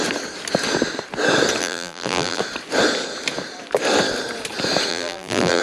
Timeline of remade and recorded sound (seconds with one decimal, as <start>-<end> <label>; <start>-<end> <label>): 0.0-1.6 recorded; 1.6-2.4 remade; 2.4-4.9 recorded; 4.9-5.6 remade